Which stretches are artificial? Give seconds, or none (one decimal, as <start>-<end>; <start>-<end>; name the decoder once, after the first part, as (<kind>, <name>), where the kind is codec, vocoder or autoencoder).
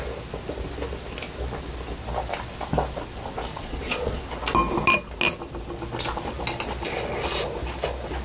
3.5-4.2 (vocoder, Vocos)